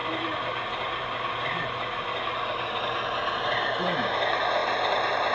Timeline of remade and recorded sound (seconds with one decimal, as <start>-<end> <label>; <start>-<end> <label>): 0.0-5.3 recorded